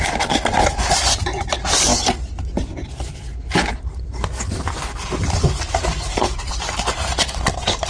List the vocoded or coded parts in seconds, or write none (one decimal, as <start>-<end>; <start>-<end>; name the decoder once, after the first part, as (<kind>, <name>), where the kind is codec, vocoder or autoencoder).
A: 0.0-1.9 (vocoder, BigVGAN v2); 3.7-7.9